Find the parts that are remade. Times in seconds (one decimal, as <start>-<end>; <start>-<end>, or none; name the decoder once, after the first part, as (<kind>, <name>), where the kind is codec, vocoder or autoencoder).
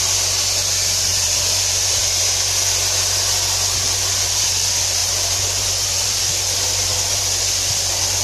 1.1-2.2 (vocoder, BigVGAN v2); 5.0-6.2